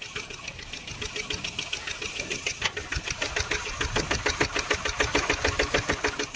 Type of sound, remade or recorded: recorded